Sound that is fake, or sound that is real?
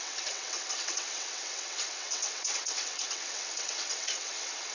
fake